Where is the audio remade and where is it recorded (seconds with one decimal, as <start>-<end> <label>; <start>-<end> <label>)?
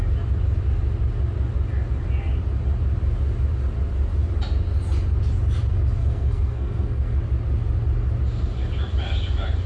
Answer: 0.0-6.0 recorded; 6.0-7.2 remade; 7.2-9.7 recorded